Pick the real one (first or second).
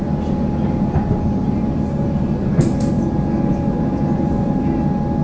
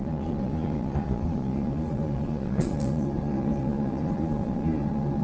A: first